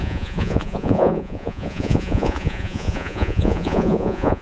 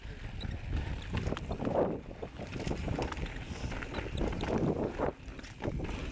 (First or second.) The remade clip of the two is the first